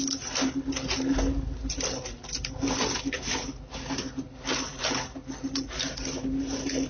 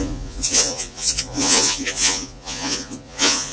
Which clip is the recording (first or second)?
first